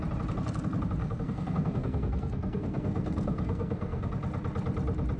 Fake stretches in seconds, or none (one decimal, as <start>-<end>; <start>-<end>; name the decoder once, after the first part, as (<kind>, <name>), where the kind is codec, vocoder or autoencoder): 1.0-4.1 (codec, SNAC)